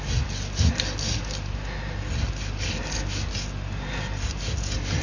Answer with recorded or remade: recorded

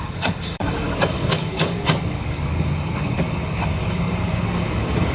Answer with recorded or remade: remade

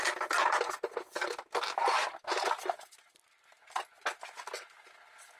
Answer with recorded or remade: recorded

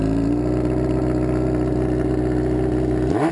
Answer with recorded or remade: recorded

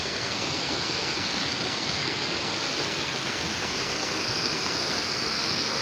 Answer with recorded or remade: remade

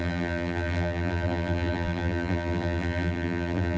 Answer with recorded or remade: remade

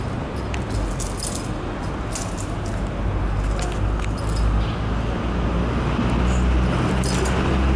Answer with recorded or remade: recorded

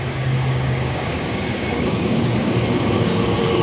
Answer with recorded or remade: remade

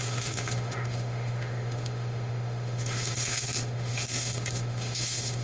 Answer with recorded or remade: remade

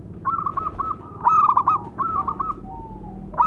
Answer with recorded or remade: recorded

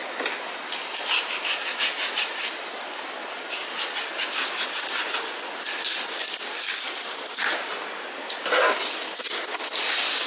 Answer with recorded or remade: recorded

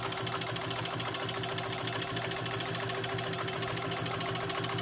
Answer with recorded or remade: recorded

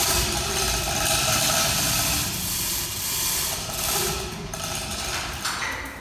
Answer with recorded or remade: remade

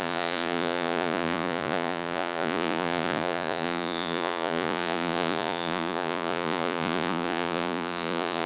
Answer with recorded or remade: remade